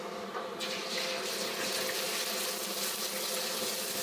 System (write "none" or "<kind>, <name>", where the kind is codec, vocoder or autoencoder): none